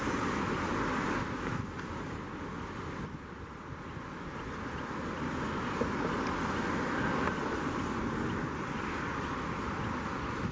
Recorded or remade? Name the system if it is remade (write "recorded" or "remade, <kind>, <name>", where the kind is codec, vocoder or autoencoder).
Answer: recorded